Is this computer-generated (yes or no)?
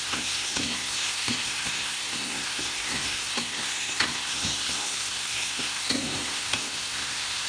yes